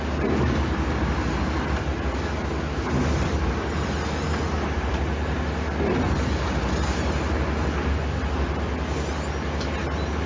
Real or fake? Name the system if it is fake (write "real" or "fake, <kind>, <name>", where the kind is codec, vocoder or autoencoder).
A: real